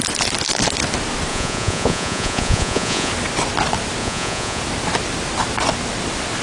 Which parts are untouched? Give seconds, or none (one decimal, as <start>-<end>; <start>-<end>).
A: 0.0-1.3; 3.1-4.0; 4.6-6.4